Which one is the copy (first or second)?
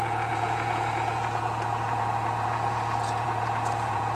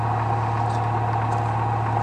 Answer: first